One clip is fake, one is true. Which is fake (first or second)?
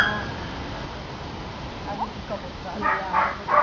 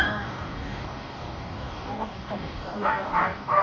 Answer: second